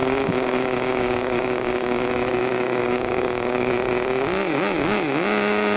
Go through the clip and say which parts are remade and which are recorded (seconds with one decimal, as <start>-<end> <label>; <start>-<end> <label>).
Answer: 0.0-2.1 remade; 2.1-2.8 recorded; 2.8-3.7 remade; 3.7-5.8 recorded